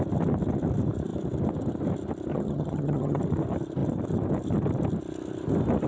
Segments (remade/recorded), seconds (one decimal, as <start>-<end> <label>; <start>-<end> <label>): 0.0-2.3 recorded; 2.3-3.2 remade; 3.2-5.9 recorded